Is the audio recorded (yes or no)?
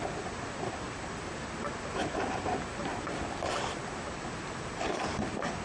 yes